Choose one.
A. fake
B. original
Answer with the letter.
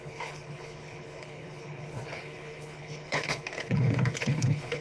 A